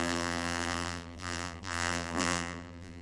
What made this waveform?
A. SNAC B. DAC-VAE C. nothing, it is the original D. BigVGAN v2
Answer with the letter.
D